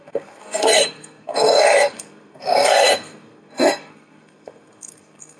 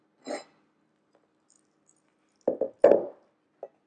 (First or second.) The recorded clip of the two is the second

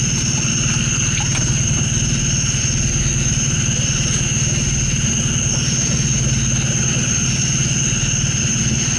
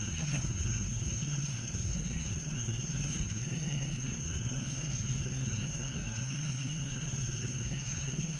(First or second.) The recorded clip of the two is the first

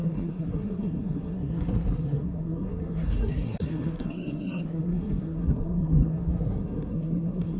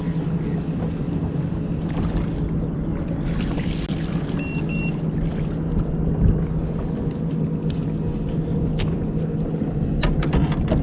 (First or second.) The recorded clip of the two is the second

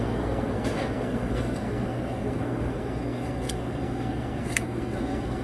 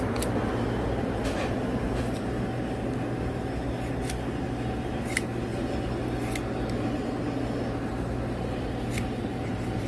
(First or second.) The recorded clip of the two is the second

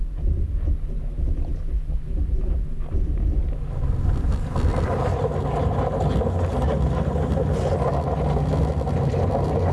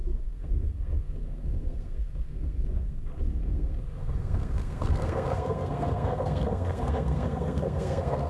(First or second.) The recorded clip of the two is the first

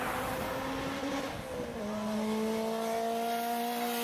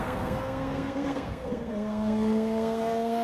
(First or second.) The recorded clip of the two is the first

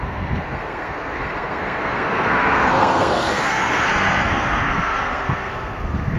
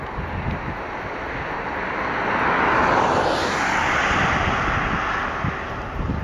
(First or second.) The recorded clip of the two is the second